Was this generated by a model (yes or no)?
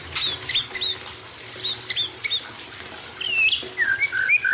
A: no